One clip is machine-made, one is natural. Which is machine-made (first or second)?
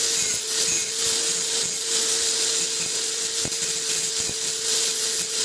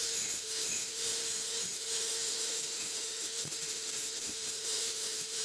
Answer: second